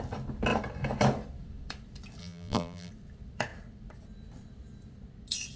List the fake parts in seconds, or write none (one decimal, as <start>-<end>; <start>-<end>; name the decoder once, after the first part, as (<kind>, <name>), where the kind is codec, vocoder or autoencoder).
2.2-2.9 (vocoder, BigVGAN v2)